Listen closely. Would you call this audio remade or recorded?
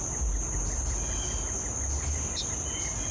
recorded